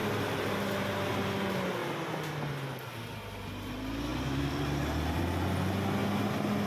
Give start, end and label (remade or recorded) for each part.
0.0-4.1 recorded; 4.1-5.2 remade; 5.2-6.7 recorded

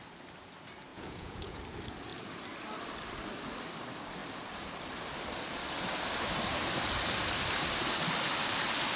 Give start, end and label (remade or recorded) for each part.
0.0-0.9 recorded; 0.9-1.6 remade; 1.6-9.0 recorded

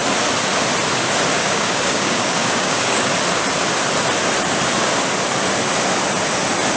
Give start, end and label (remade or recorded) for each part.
0.0-1.4 recorded; 1.4-3.1 remade; 3.1-6.8 recorded

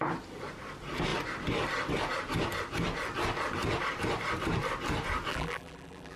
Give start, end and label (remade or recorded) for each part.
0.0-5.3 recorded; 5.3-6.2 remade

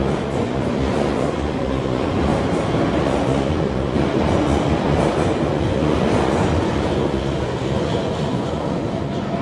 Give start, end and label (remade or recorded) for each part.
0.0-2.3 remade; 2.3-2.9 recorded; 2.9-9.4 remade

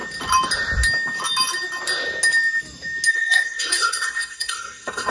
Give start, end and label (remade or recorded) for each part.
0.0-3.1 recorded; 3.1-5.1 remade

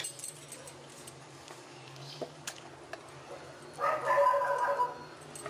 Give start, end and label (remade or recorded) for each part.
0.0-0.9 recorded; 0.9-2.7 remade; 2.7-5.5 recorded